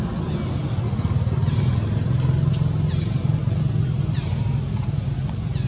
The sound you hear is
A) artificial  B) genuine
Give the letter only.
B